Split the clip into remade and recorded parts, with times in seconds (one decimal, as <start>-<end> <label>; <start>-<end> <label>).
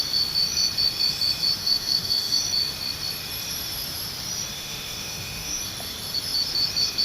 0.0-1.6 recorded; 1.6-2.4 remade; 2.4-4.5 recorded; 4.5-5.6 remade; 5.6-7.0 recorded